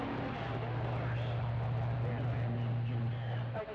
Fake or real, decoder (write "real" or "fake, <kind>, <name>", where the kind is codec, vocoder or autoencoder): real